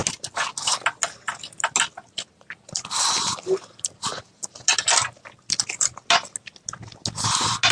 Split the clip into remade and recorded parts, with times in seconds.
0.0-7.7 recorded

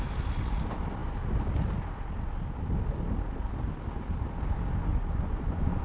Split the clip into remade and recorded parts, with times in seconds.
0.0-4.9 recorded; 4.9-5.8 remade

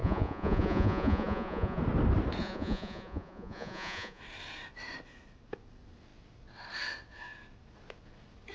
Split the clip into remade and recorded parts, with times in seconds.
0.0-1.8 remade; 1.8-2.4 recorded; 2.4-4.2 remade; 4.2-8.5 recorded

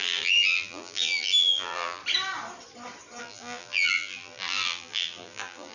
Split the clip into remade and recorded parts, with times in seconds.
0.0-2.0 remade; 2.0-3.2 recorded; 3.2-5.7 remade

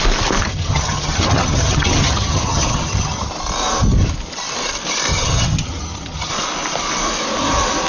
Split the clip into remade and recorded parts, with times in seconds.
0.0-0.4 recorded; 0.4-3.3 remade; 3.3-5.1 recorded; 5.1-6.3 remade; 6.3-7.9 recorded